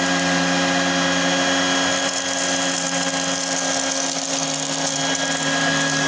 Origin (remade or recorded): recorded